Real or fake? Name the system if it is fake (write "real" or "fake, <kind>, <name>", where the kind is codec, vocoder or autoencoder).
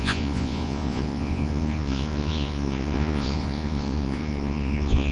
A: fake, vocoder, Vocos